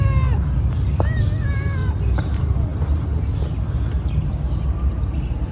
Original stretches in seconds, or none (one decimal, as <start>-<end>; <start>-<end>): 0.0-1.8; 2.3-5.5